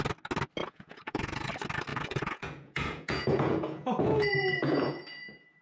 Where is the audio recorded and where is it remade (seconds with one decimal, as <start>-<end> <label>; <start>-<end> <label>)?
0.0-0.6 recorded; 0.6-1.5 remade; 1.5-1.9 recorded; 1.9-5.6 remade